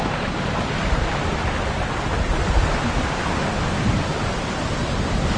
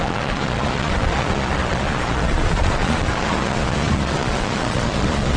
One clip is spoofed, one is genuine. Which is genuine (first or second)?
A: first